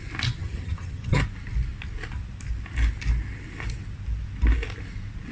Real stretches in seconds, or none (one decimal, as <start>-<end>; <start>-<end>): 0.0-0.4; 1.2-5.3